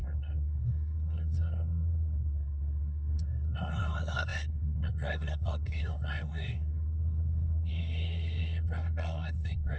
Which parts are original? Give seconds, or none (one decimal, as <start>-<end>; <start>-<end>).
none